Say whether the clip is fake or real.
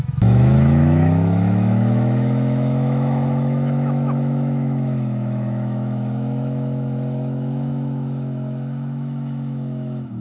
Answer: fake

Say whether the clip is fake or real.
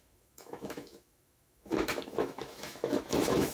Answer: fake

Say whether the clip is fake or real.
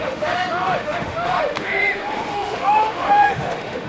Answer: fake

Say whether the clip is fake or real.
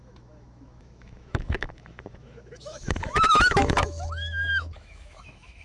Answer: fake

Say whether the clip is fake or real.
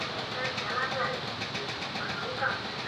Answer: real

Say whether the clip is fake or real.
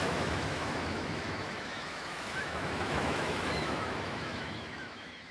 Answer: fake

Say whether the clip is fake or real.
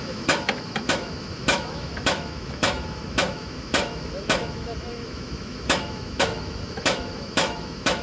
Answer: fake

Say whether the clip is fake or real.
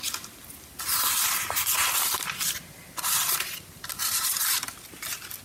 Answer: real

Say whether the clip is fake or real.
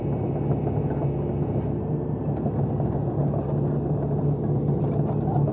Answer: real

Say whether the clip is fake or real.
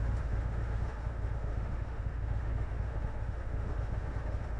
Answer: fake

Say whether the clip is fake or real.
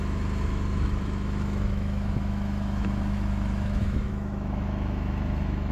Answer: fake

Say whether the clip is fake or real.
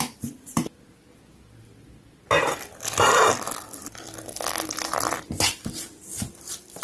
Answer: real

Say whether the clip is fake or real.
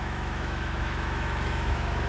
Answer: fake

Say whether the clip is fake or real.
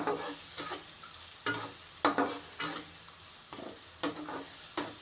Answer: real